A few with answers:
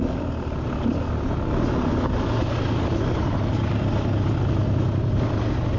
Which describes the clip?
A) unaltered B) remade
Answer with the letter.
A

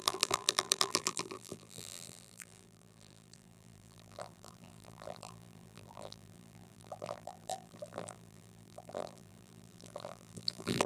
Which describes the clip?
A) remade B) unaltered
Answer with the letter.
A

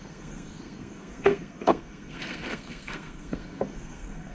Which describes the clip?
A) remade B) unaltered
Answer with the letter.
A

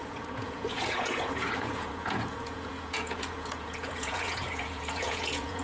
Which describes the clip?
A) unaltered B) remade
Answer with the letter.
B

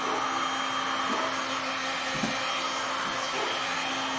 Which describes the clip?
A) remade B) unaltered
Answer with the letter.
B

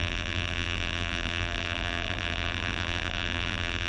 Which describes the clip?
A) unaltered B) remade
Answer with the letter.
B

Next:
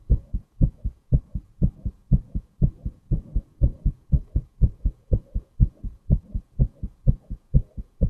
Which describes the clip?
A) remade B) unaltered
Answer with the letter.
A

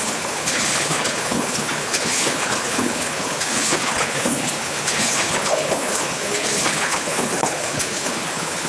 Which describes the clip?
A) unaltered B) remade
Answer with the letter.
B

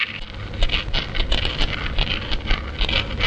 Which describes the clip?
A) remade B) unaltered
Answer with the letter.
B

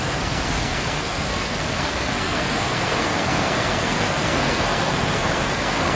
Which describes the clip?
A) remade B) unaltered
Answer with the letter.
A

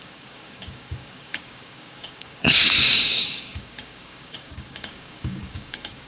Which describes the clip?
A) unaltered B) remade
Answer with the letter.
B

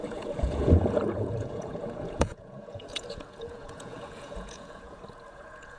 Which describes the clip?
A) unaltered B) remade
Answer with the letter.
B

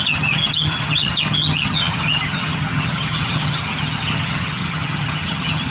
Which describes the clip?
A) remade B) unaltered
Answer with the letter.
A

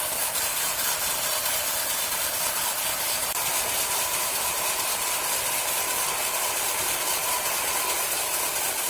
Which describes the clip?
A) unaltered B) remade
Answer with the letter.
A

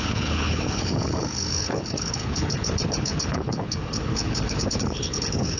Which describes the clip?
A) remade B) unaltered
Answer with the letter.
A